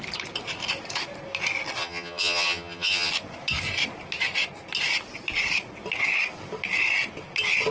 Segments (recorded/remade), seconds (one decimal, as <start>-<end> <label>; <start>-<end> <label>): 0.0-1.8 recorded; 1.8-3.1 remade; 3.1-7.7 recorded